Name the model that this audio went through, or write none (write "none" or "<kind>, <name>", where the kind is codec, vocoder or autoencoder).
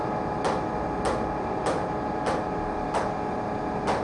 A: none